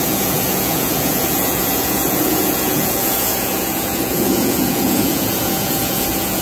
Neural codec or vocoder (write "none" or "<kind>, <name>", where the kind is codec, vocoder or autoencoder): vocoder, Vocos